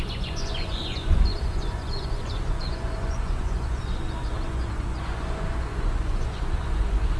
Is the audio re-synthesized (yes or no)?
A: yes